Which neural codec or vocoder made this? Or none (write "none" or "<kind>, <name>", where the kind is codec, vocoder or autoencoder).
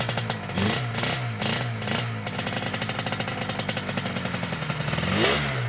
none